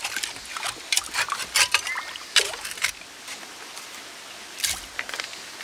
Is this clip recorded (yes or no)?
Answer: no